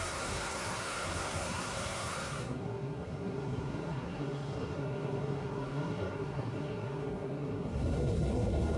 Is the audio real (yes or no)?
no